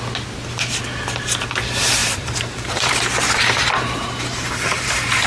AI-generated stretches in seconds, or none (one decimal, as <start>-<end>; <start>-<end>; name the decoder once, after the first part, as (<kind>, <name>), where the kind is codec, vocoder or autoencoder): 2.0-5.3 (vocoder, BigVGAN v2)

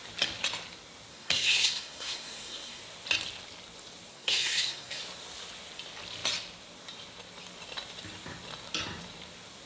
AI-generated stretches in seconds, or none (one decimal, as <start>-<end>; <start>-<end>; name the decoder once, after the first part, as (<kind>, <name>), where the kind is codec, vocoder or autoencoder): 1.1-2.8 (codec, SNAC); 4.1-5.0

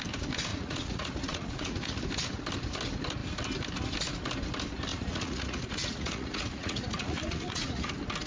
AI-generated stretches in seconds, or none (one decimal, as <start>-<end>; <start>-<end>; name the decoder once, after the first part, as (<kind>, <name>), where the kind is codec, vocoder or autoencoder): 0.5-2.0 (vocoder, Vocos); 4.9-7.9

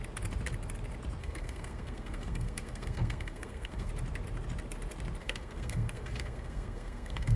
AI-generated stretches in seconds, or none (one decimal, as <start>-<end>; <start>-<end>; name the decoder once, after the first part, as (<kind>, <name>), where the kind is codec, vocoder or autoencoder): 1.2-3.9 (codec, SNAC); 5.2-7.4

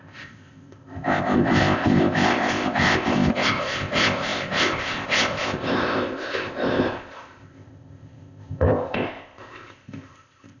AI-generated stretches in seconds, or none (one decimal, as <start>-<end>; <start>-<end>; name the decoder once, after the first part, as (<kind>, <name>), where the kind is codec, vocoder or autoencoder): 0.0-10.6 (codec, ZipCodec)

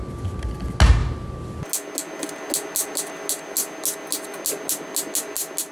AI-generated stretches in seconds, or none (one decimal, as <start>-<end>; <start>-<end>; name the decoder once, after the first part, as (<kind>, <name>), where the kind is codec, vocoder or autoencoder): none

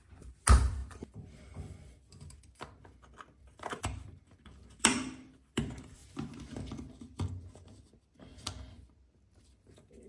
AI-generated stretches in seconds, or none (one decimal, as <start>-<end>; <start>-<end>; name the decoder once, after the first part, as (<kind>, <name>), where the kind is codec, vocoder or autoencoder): 0.0-6.0 (vocoder, BigVGAN v2); 6.6-8.3; 9.4-10.1

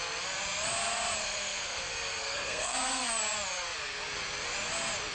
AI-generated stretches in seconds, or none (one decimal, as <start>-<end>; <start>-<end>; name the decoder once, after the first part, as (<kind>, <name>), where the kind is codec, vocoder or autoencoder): 1.2-1.8 (codec, SNAC); 2.2-3.0